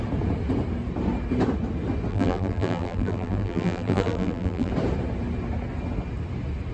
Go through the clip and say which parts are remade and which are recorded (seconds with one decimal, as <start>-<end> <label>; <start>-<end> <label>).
0.0-2.1 recorded; 2.1-4.7 remade; 4.7-6.7 recorded